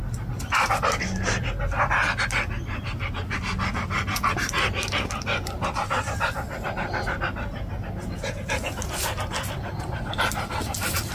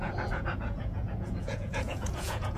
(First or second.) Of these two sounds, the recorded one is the first